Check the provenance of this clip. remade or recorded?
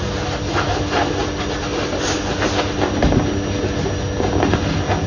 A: recorded